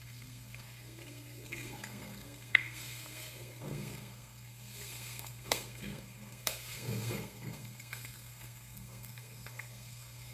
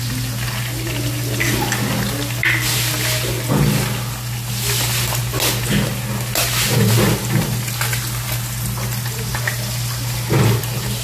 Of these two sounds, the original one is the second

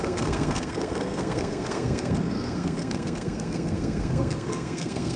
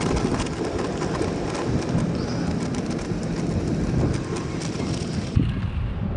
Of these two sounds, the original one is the second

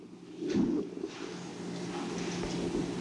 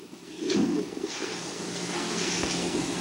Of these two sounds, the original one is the first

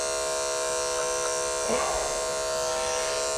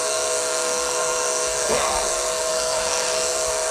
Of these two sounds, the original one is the first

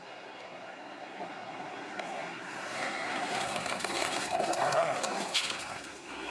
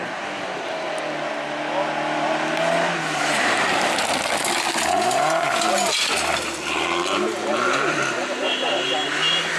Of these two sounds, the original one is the second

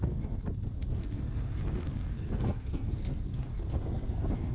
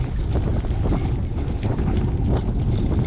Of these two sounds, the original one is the second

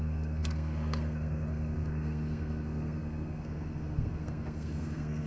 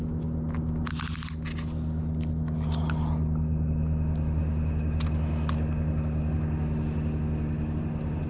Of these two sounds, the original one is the second